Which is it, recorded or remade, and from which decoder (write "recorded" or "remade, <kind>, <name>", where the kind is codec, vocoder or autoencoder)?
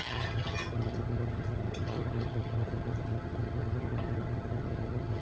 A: remade, vocoder, HiFi-GAN